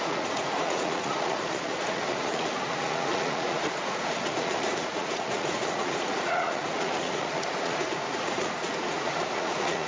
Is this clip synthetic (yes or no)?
yes